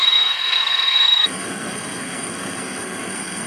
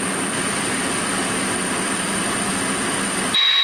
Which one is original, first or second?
second